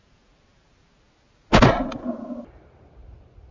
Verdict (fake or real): real